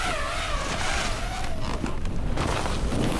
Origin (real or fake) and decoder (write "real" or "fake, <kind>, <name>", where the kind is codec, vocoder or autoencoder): real